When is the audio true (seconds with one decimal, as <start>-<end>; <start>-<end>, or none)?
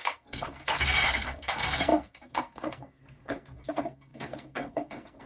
none